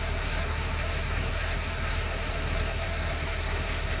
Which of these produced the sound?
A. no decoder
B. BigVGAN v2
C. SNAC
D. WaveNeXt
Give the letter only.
C